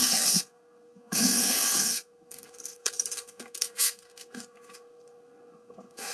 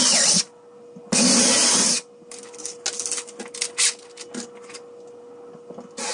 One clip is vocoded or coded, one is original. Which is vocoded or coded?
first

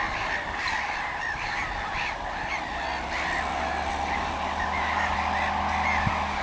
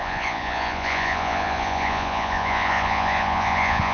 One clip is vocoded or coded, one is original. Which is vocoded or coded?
second